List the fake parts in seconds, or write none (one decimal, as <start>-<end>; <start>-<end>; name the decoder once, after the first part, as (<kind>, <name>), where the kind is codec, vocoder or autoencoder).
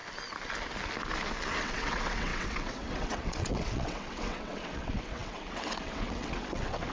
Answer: 1.6-6.9 (vocoder, WaveNeXt)